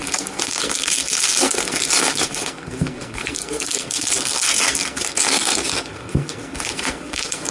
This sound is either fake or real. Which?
fake